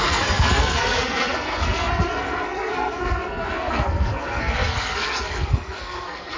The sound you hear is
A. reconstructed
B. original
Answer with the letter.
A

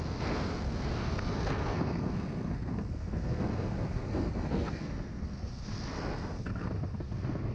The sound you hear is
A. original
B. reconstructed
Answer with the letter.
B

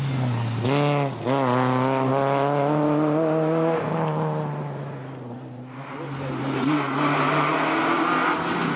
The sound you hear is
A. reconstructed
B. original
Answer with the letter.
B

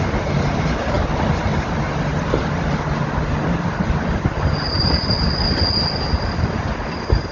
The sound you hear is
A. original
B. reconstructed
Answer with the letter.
A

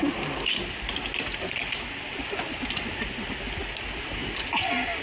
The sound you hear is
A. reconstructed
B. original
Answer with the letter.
B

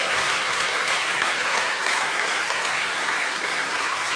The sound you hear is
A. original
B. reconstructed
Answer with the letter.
B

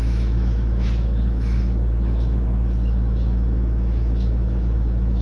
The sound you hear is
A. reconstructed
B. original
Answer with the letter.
A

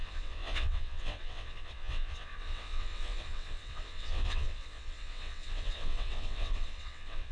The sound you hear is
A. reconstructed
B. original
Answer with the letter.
A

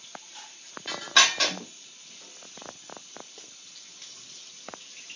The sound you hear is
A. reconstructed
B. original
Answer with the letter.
B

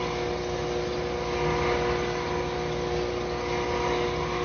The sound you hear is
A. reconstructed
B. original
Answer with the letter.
B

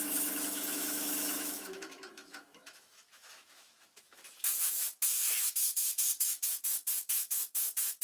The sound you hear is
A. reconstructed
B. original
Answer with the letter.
A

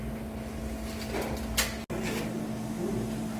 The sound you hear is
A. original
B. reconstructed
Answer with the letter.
A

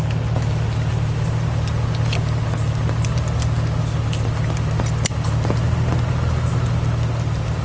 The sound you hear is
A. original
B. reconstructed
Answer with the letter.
A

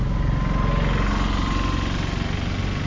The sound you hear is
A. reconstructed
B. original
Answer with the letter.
B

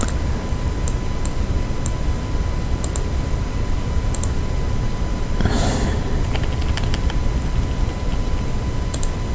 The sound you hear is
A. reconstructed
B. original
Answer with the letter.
B